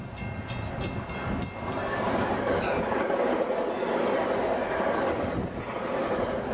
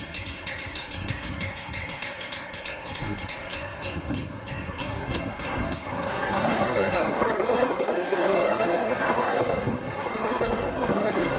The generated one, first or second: second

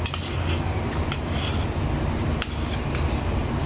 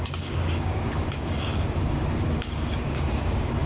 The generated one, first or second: second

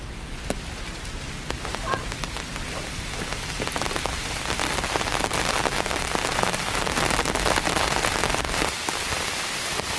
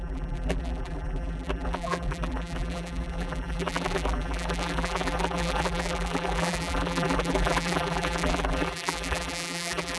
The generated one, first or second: second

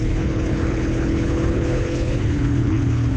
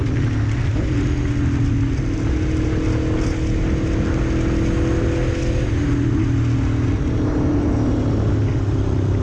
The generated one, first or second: first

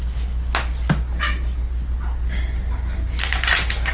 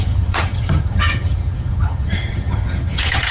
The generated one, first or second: second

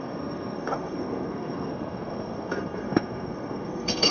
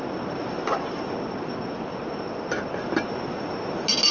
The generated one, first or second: first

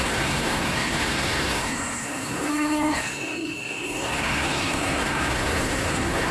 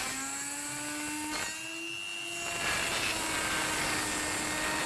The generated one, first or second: first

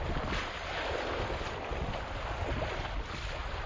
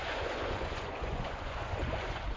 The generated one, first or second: second